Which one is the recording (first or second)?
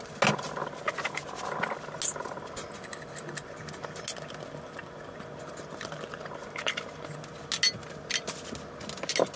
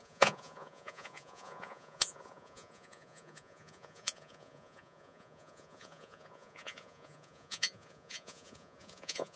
first